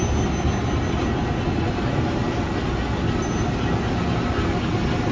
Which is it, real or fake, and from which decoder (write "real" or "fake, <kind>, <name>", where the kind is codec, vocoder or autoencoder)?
real